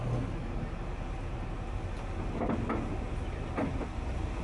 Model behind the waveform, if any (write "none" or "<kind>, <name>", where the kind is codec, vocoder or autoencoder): none